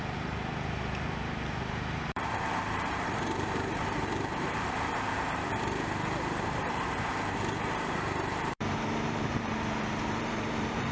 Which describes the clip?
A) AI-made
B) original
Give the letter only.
A